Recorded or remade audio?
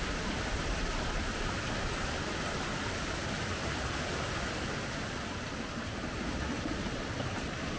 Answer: recorded